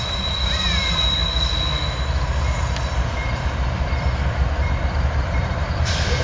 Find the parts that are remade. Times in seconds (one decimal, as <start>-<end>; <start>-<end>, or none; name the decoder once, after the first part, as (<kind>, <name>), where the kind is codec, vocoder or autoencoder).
0.0-1.2 (vocoder, BigVGAN v2); 2.0-6.2